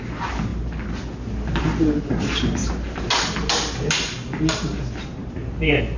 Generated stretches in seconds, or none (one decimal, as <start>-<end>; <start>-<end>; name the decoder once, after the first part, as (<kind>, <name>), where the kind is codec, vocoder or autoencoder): none